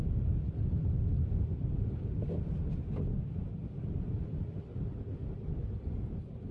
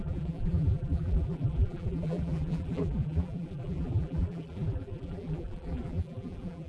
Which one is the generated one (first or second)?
second